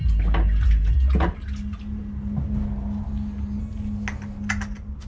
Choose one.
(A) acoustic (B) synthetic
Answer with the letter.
A